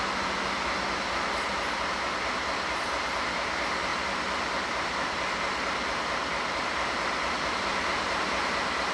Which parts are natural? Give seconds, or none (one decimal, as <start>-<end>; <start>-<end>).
0.0-8.9